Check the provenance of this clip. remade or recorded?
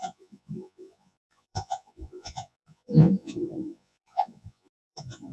remade